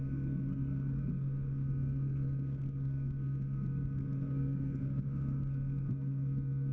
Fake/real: fake